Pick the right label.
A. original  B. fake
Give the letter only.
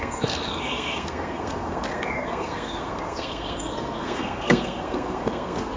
B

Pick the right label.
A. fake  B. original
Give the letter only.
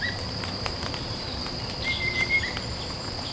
B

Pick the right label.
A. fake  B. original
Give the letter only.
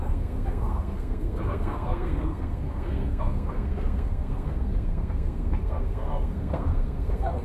A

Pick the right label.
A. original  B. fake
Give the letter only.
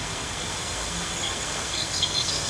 B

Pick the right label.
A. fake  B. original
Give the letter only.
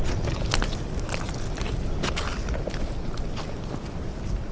B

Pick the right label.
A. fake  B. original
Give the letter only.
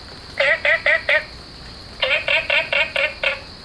B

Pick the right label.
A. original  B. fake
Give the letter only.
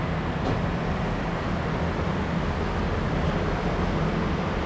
A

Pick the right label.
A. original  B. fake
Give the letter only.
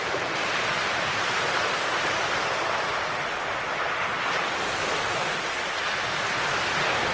A